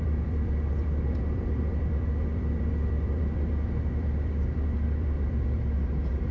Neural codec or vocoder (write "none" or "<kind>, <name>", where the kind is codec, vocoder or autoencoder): vocoder, BigVGAN v2